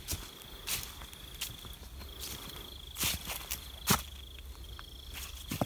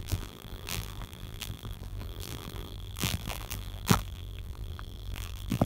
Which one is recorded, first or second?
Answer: first